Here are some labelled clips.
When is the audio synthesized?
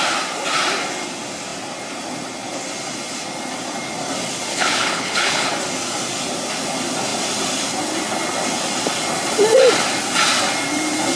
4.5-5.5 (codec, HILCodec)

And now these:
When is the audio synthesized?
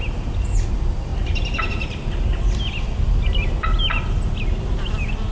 none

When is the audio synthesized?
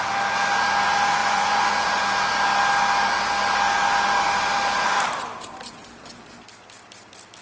1.2-2.0 (vocoder, Vocos)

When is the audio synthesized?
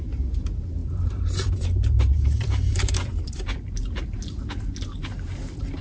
0.8-3.8 (vocoder, BigVGAN v2); 5.0-5.8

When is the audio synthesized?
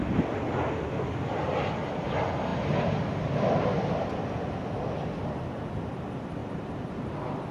6.4-7.1 (vocoder, BigVGAN v2)